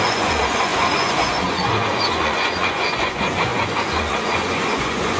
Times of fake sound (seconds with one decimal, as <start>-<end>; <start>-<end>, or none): 0.0-5.2